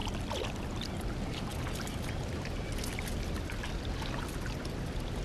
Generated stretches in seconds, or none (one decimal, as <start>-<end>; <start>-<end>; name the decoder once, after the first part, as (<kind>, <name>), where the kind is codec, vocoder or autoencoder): 0.0-0.9 (vocoder, BigVGAN v2)